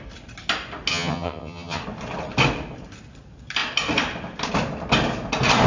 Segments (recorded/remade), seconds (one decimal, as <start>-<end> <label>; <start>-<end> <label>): 0.0-0.9 recorded; 0.9-1.8 remade; 1.8-5.7 recorded